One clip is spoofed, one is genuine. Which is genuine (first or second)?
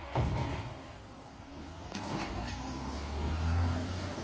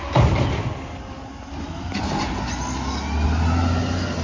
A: second